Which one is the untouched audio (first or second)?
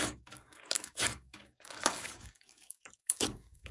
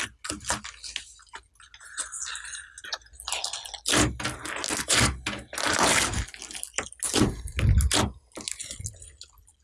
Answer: second